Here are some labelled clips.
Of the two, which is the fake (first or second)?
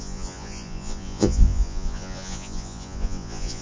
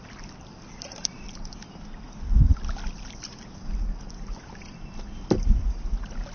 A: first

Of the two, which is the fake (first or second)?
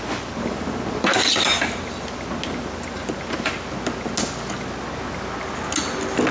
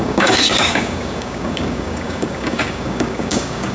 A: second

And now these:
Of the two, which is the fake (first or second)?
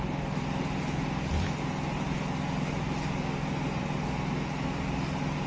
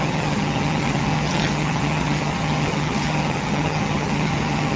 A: second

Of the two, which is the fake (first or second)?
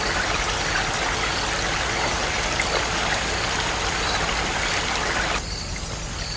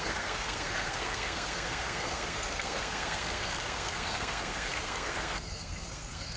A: second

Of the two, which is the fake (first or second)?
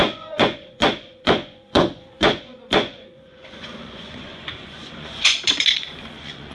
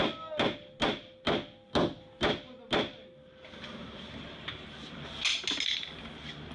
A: first